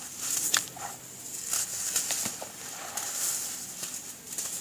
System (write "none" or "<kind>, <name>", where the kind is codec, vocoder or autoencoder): none